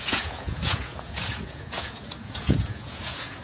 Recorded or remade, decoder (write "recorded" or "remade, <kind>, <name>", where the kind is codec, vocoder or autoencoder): remade, vocoder, Vocos